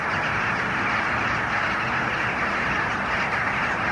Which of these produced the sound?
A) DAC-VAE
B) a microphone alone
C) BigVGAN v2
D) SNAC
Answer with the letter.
B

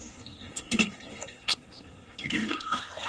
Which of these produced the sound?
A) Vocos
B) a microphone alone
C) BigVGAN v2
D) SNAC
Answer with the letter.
D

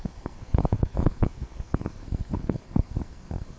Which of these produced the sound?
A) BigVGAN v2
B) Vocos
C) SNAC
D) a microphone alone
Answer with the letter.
C